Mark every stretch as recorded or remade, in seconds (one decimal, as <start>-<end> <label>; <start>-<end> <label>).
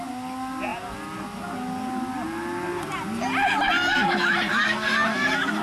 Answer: 0.0-3.8 recorded; 3.8-5.6 remade